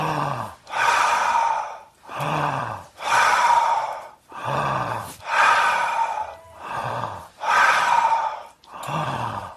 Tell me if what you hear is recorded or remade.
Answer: remade